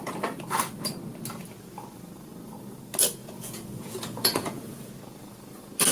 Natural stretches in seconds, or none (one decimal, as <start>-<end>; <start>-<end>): 0.0-3.2; 4.9-5.9